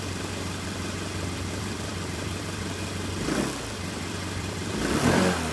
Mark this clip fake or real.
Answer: fake